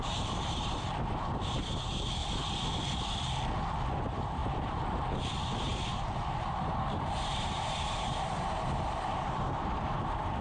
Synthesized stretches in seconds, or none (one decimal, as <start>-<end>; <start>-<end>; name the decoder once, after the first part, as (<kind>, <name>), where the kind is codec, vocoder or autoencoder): 0.0-2.2 (vocoder, BigVGAN v2); 4.0-4.4; 5.3-10.4